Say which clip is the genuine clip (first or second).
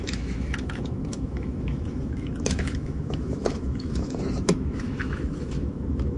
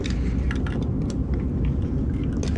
second